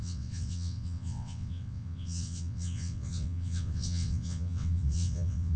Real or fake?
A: fake